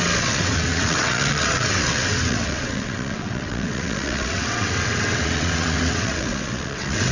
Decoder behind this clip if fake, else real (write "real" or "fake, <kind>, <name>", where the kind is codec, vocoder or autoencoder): fake, vocoder, WaveNeXt